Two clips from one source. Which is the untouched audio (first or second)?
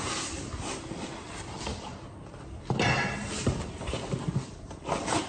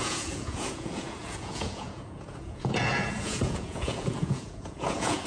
first